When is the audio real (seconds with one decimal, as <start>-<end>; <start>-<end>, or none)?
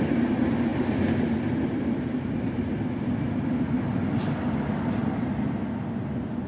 0.0-6.5